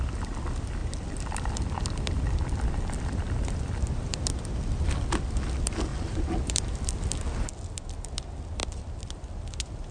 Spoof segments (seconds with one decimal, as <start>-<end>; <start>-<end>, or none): 0.8-5.3; 5.9-7.3; 8.6-9.4